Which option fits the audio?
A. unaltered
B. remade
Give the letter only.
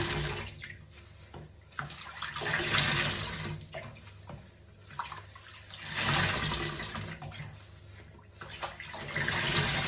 A